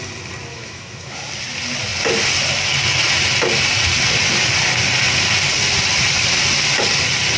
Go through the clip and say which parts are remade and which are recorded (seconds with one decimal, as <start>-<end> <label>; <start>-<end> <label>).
0.0-0.5 recorded; 0.5-1.3 remade; 1.3-7.4 recorded